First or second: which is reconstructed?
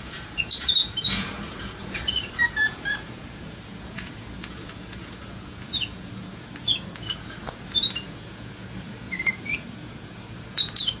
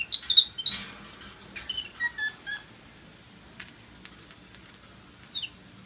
first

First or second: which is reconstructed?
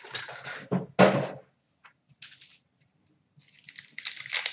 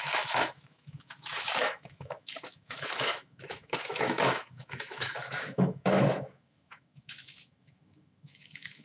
second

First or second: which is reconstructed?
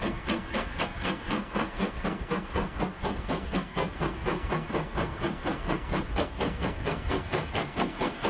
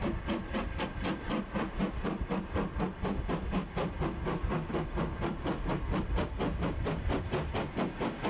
first